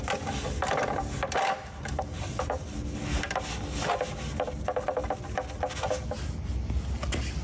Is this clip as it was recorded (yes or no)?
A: yes